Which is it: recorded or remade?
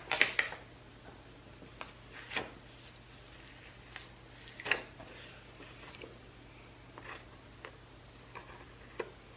recorded